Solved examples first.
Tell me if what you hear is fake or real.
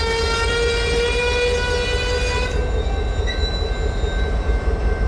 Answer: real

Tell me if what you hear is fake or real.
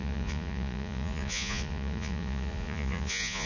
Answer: fake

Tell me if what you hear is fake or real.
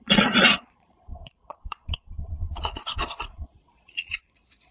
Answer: fake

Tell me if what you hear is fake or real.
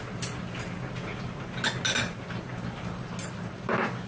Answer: real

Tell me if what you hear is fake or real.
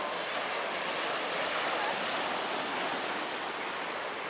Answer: real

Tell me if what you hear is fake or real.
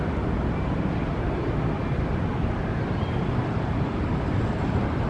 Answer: real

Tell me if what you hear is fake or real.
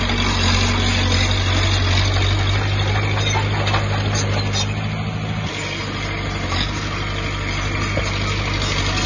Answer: real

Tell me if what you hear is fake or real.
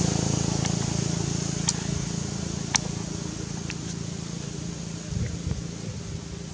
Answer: real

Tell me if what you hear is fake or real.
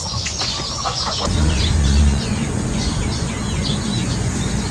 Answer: fake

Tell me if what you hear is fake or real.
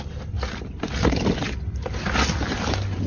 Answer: real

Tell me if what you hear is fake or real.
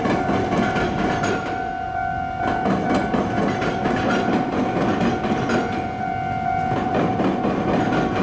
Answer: real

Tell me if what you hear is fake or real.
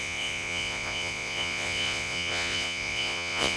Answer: fake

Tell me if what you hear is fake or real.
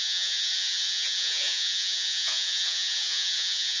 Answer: fake